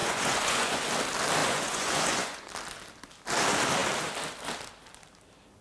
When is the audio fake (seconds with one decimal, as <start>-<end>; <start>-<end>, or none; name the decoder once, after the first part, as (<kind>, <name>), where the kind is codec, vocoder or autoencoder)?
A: 0.0-0.8 (vocoder, Vocos); 1.4-2.5